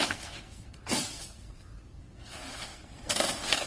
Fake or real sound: fake